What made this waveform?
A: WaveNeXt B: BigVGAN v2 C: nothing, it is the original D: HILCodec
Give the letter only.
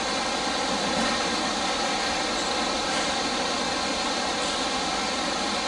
C